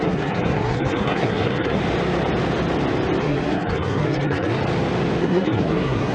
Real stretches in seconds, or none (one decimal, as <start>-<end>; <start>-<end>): 1.8-3.2; 4.6-5.2